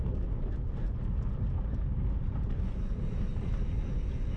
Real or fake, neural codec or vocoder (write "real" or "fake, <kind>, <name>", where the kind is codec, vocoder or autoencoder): real